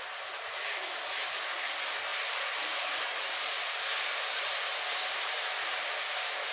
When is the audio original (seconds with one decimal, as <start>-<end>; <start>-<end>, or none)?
0.0-6.5